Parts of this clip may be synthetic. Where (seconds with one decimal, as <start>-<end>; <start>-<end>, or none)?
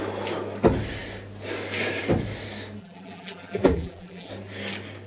2.8-4.3